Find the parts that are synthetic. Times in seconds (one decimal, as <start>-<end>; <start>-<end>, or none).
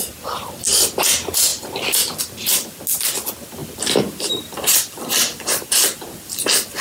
3.6-6.8